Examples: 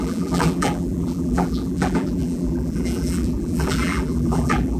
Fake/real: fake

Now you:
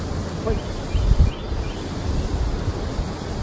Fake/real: real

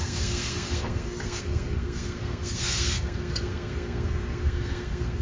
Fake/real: fake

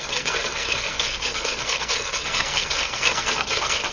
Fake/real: fake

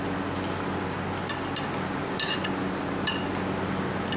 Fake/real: real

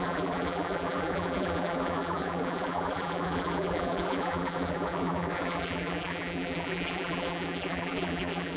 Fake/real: fake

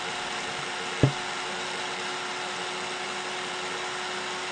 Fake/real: real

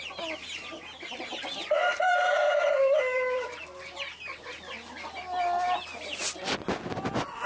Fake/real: real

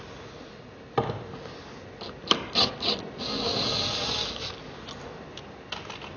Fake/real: real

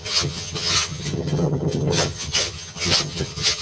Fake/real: fake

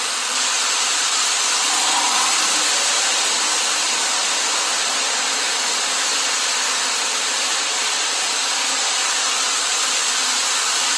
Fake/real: fake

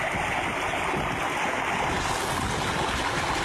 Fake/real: real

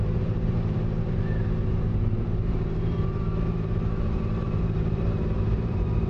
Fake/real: fake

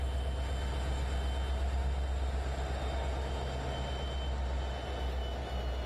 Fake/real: real